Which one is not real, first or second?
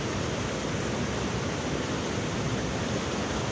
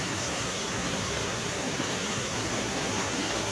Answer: second